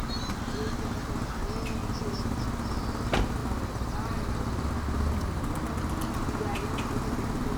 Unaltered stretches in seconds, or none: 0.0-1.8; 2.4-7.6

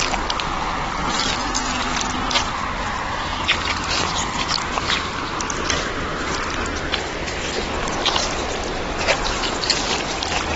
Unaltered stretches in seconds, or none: 0.0-10.6

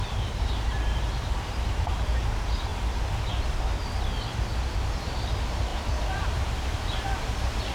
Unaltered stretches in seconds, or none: 2.7-5.0

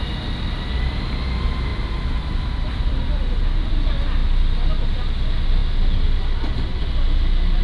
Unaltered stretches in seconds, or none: 0.0-1.7; 3.7-7.6